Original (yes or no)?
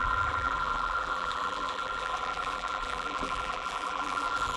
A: no